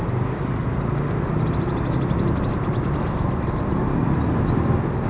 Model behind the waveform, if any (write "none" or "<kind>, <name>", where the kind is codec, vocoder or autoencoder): none